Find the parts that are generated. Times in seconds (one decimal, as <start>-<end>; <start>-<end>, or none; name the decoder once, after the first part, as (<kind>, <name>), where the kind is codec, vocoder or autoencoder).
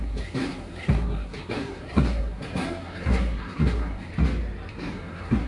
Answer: 0.0-4.1 (codec, SNAC); 4.7-5.5